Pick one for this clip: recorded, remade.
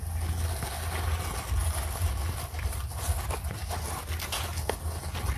recorded